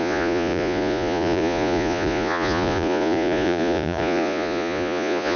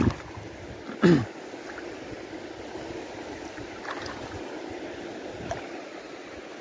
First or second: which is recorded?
second